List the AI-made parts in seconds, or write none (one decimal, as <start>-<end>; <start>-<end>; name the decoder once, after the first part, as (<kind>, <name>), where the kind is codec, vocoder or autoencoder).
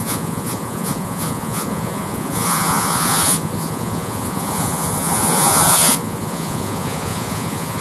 0.0-7.8 (vocoder, Vocos)